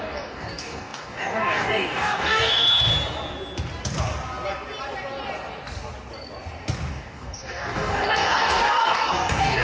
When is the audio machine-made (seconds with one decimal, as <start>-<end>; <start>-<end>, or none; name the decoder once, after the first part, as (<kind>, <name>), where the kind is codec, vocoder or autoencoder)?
0.0-2.9 (codec, DAC); 6.9-9.6